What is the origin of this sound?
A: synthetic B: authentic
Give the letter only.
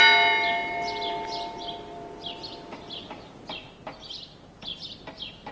B